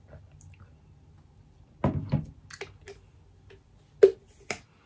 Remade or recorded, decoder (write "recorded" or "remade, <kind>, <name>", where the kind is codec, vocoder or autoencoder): recorded